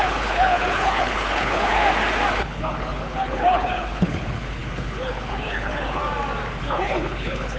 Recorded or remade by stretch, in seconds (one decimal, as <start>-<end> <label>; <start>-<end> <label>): 0.0-1.8 remade; 1.8-2.3 recorded; 2.3-6.0 remade; 6.0-6.6 recorded; 6.6-7.6 remade